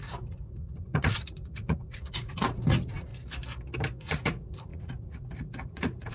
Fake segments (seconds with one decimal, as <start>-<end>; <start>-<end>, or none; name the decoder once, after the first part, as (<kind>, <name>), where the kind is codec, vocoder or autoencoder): 0.0-3.1 (vocoder, Vocos); 4.0-6.1